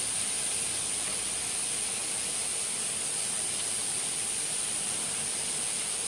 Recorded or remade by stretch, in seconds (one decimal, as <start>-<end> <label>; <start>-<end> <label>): 0.0-6.1 recorded